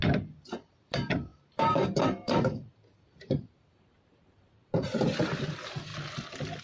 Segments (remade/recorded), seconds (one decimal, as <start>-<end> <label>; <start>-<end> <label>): 0.0-0.7 recorded; 0.7-5.9 remade; 5.9-6.6 recorded